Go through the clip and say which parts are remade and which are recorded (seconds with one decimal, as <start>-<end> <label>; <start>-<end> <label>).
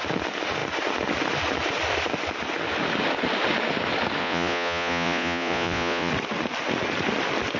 0.0-4.2 recorded; 4.2-6.1 remade; 6.1-7.6 recorded